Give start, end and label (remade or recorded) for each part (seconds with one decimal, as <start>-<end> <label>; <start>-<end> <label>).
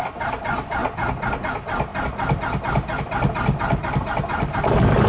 0.0-5.1 recorded